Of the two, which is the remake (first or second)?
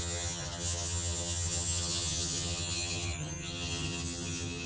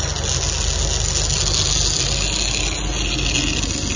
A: first